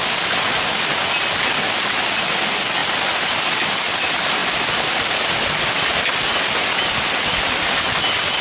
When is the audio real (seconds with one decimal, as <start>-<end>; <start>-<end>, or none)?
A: 0.0-8.4